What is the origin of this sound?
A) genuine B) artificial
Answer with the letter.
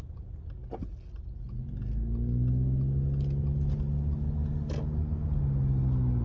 A